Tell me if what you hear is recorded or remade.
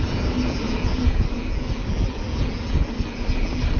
recorded